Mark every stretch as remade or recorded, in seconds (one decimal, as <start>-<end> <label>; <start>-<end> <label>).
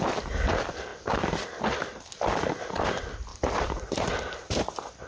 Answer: 0.0-3.3 recorded; 3.3-5.1 remade